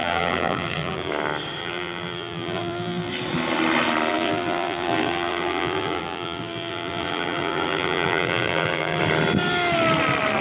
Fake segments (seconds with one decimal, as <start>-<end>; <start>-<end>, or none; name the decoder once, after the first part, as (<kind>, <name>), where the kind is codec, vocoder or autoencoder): 0.0-1.1 (vocoder, BigVGAN v2); 1.6-3.1; 4.1-9.0